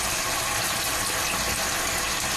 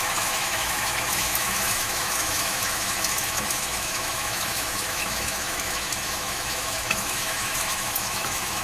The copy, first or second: second